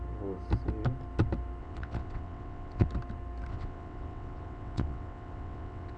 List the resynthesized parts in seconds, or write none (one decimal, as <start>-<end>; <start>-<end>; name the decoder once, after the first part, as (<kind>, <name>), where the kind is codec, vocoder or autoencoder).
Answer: 1.6-2.9 (vocoder, WaveNeXt); 3.5-6.0